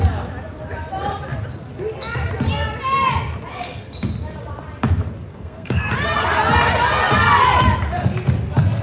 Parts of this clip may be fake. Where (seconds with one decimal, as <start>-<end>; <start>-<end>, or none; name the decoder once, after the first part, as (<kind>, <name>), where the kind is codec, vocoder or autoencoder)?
3.5-4.1 (codec, SNAC); 5.3-5.9